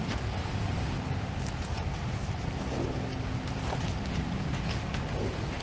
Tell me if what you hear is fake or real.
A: real